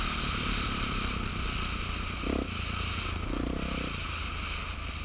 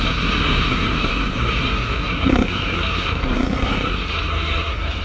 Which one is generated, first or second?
second